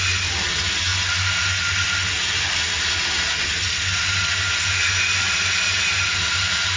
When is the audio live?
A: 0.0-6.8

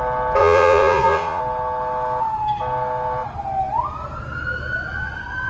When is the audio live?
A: 0.0-0.4; 1.4-5.5

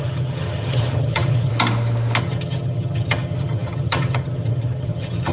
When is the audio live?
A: 1.5-2.2